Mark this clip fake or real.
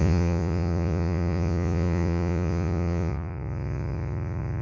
fake